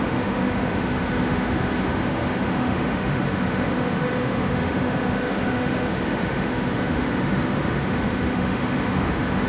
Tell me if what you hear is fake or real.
fake